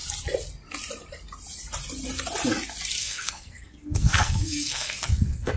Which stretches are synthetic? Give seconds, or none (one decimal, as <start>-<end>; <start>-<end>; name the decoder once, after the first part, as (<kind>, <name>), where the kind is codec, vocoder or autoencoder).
3.0-5.6 (codec, SNAC)